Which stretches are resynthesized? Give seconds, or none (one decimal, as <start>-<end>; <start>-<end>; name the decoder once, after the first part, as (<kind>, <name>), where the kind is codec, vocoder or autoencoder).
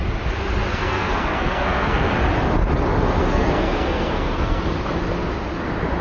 0.7-2.1 (codec, SNAC); 3.2-4.6